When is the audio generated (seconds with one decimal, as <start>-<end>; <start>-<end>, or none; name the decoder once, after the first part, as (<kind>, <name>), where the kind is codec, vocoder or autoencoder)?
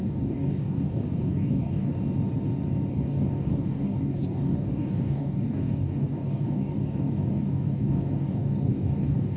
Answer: 0.0-1.9 (codec, DAC); 2.9-9.4